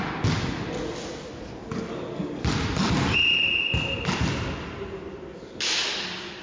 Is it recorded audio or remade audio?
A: recorded